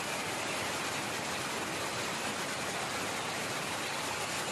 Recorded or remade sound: recorded